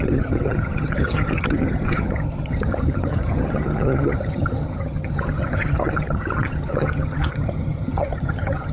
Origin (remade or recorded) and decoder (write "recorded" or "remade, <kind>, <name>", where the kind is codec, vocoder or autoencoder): remade, vocoder, HiFi-GAN